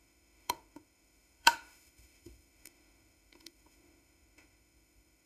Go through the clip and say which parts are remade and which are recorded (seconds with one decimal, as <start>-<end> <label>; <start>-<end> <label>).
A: 0.0-5.3 remade